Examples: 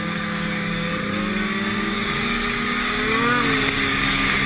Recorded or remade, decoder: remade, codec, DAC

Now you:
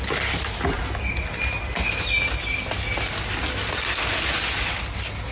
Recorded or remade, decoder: recorded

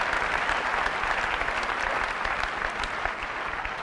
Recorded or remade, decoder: recorded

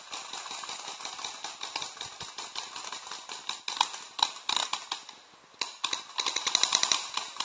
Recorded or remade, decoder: recorded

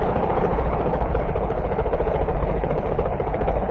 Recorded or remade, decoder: remade, codec, HILCodec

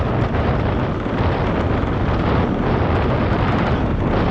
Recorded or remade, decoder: recorded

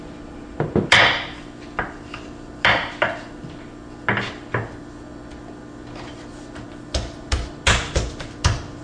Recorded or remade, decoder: recorded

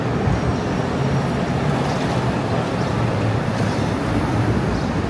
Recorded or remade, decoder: remade, vocoder, BigVGAN v2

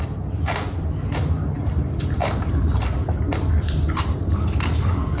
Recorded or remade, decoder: remade, vocoder, BigVGAN v2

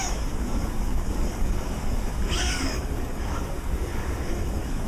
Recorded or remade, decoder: remade, codec, DAC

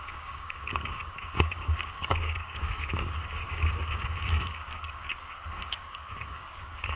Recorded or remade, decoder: remade, codec, DAC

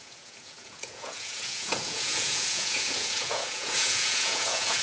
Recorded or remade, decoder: remade, vocoder, Vocos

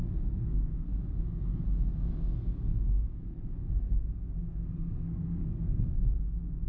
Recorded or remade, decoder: remade, codec, SNAC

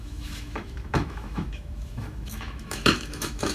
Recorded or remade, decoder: remade, autoencoder, DAC-VAE